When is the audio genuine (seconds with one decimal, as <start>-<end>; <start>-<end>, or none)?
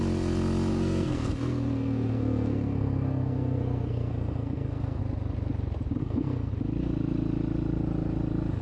0.0-0.7; 5.0-6.0; 6.5-8.6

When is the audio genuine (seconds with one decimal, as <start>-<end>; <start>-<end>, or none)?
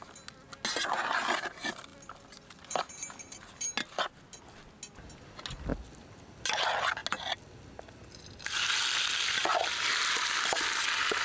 0.0-11.2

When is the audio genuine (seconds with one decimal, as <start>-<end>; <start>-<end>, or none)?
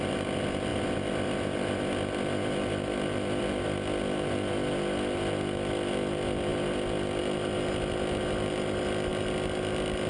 0.0-10.1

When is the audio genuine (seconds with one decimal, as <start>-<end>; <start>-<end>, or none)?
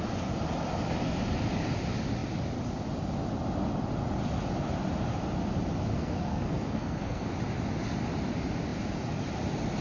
0.0-5.9; 7.3-9.8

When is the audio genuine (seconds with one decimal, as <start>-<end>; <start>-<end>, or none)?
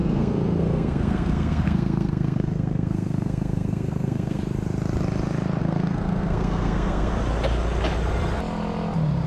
4.4-5.6; 7.1-9.3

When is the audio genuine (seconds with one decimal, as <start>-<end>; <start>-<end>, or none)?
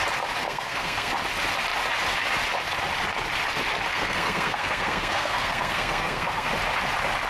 0.0-0.4; 1.1-3.9; 6.5-7.3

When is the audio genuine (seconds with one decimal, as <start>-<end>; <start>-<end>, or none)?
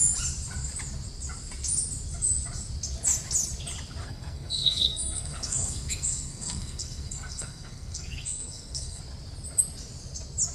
0.0-4.0; 9.0-10.5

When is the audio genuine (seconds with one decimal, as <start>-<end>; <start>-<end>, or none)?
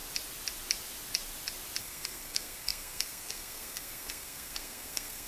0.0-1.8